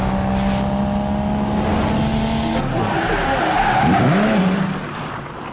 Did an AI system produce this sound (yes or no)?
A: no